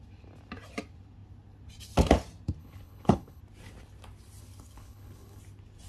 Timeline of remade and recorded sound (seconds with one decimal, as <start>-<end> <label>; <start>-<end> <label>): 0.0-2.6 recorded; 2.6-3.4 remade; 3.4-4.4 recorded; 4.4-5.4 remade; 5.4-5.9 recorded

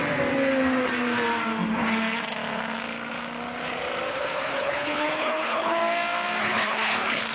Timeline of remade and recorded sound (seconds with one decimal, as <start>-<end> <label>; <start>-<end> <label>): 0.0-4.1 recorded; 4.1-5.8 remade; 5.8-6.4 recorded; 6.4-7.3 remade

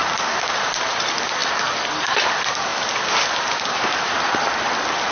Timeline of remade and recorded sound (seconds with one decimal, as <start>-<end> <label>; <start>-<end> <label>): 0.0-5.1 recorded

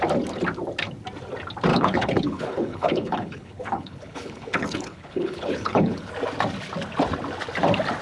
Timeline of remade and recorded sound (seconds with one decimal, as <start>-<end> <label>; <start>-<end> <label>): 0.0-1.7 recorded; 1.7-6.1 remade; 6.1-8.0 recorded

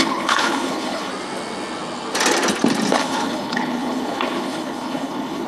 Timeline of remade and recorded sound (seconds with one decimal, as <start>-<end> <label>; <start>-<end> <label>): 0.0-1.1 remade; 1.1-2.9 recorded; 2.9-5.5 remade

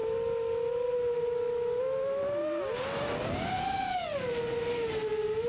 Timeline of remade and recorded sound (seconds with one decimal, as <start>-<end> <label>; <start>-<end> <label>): 0.0-5.5 recorded

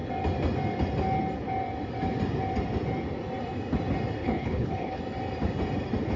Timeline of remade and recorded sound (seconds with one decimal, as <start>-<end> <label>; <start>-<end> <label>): 0.0-4.2 recorded; 4.2-5.0 remade; 5.0-6.2 recorded

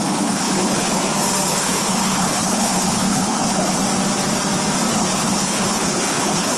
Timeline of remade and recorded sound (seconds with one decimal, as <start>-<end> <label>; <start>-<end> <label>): 0.0-1.0 remade; 1.0-1.5 recorded; 1.5-3.8 remade; 3.8-4.9 recorded; 4.9-6.6 remade